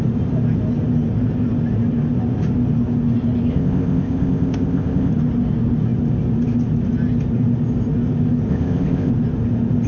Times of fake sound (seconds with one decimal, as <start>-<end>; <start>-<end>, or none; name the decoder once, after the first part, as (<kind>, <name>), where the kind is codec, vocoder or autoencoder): 3.5-5.1 (codec, ZipCodec); 8.5-9.1